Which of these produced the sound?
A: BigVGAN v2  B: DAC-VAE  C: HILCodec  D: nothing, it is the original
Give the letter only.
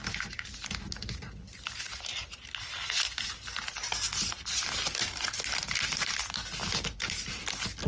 D